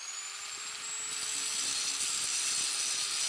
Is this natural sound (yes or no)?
yes